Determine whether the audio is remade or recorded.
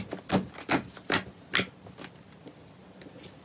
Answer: recorded